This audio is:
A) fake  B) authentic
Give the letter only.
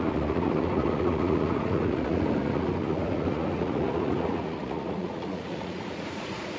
A